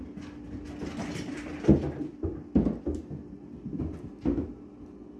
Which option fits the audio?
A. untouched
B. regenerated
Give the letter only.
A